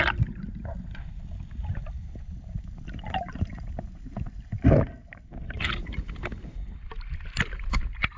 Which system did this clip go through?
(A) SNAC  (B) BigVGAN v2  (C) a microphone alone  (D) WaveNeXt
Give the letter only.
C